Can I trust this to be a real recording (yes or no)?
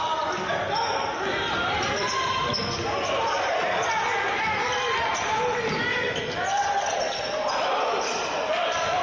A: yes